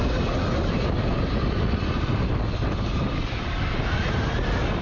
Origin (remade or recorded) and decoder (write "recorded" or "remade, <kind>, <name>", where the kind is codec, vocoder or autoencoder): recorded